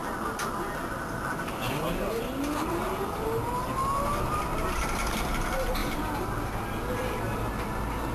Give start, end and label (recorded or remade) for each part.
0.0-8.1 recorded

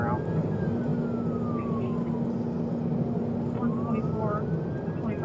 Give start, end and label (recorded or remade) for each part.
0.0-5.2 recorded